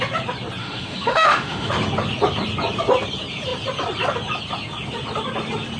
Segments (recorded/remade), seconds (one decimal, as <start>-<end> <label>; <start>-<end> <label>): 0.0-0.6 recorded; 0.6-1.7 remade; 1.7-5.8 recorded